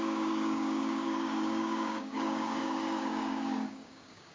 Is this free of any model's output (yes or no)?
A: no